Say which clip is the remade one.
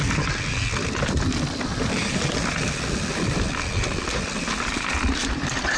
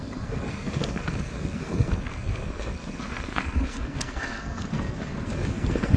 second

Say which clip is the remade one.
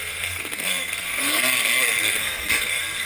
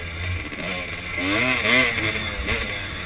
first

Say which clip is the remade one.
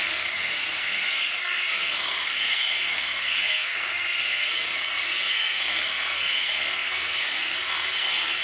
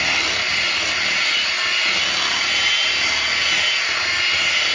first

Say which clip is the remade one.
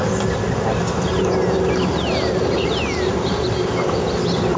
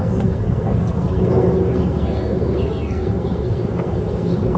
second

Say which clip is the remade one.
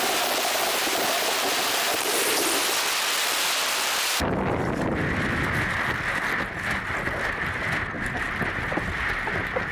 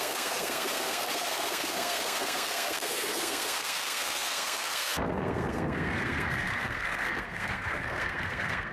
second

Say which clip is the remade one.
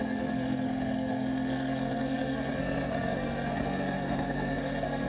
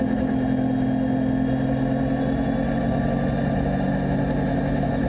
first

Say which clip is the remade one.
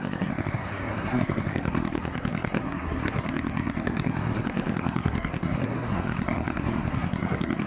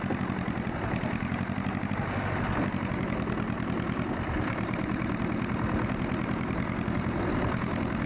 first